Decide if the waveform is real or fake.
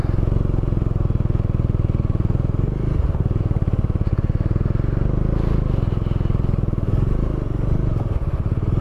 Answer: real